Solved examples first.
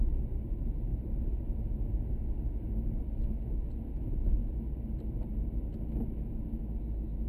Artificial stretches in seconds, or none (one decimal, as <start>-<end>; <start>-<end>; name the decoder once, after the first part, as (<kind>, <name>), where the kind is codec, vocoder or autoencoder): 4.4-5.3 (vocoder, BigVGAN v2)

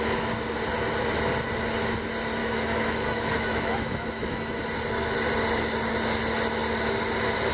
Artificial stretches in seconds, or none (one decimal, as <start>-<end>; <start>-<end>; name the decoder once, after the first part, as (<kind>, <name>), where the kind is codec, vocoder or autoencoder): 2.4-4.6 (autoencoder, DAC-VAE)

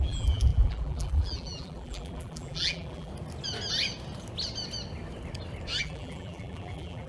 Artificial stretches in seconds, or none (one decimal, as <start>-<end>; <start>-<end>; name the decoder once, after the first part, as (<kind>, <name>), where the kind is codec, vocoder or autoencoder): 0.0-3.1 (vocoder, BigVGAN v2); 5.8-7.1

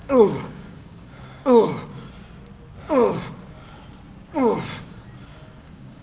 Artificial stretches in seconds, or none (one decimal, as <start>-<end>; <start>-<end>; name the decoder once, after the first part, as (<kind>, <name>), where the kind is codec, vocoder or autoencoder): 0.0-1.7 (codec, DAC); 5.2-6.0